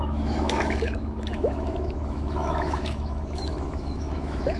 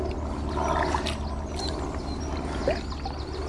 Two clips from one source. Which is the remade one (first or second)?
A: first